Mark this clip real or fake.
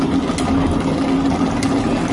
real